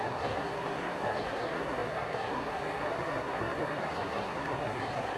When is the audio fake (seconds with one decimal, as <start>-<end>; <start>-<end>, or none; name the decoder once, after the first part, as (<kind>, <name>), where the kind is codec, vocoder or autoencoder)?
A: 0.0-5.2 (codec, SNAC)